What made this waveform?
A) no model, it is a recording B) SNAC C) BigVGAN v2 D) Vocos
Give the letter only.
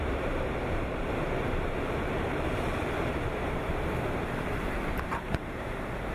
C